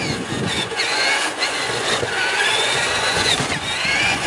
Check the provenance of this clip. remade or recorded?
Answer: remade